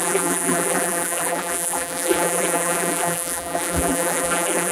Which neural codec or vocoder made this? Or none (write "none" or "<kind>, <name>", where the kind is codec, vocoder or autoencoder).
vocoder, BigVGAN v2